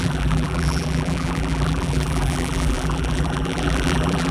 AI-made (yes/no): yes